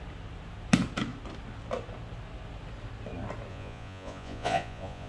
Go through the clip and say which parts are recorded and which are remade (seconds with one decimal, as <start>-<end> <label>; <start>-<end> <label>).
0.0-3.5 recorded; 3.5-5.1 remade